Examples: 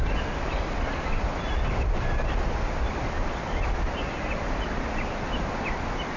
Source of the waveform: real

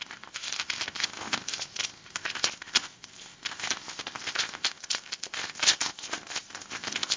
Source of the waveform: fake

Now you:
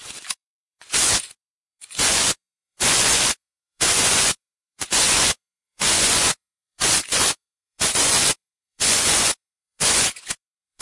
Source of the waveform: fake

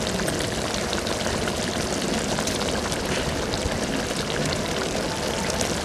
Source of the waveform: fake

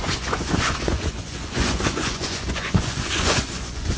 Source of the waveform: fake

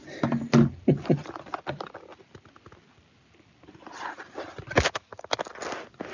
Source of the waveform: real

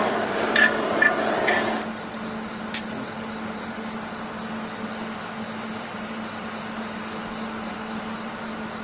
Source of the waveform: real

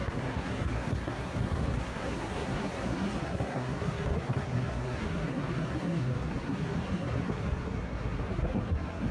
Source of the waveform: fake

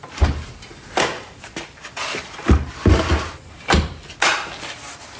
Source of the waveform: real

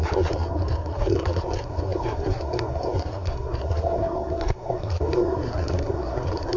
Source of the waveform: fake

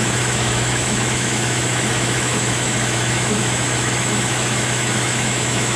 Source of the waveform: fake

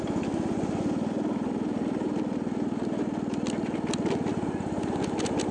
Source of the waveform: real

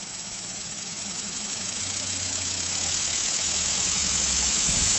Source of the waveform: fake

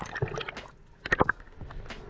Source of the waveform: real